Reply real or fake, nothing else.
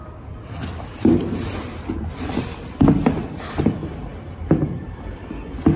fake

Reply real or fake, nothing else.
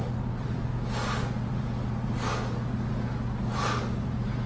real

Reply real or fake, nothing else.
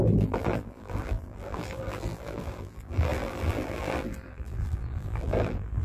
fake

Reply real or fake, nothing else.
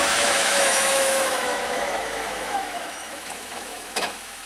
fake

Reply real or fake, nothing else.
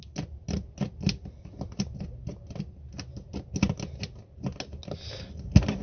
real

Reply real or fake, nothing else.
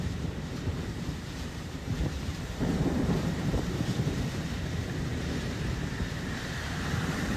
fake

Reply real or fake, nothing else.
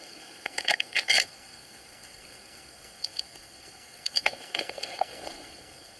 fake